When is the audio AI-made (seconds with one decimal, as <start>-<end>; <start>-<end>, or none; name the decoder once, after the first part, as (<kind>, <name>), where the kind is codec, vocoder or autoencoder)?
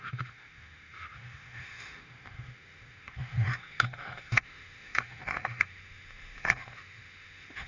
0.0-7.7 (autoencoder, DAC-VAE)